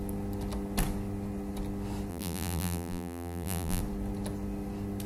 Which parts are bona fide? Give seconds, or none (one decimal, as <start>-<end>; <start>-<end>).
0.0-2.1; 3.8-5.1